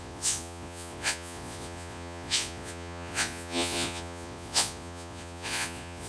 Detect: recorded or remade remade